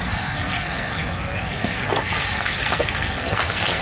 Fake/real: fake